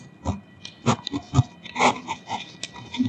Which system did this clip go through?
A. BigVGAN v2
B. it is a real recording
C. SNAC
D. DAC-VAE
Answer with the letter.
B